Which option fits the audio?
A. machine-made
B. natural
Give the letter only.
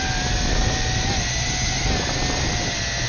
B